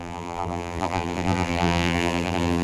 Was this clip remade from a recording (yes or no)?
yes